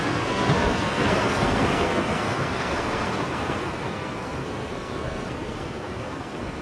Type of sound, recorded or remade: remade